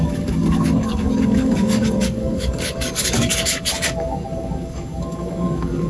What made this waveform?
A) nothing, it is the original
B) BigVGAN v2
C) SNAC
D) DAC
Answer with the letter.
D